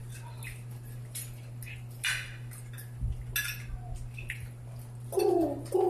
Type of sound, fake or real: real